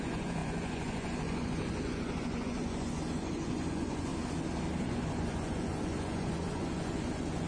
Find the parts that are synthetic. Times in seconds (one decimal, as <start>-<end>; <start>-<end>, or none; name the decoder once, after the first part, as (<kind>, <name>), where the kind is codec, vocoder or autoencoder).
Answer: 0.0-4.1 (vocoder, Vocos); 4.9-7.5